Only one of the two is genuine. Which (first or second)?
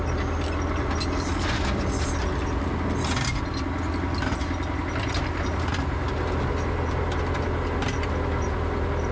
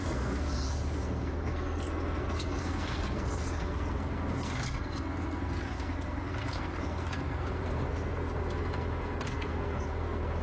first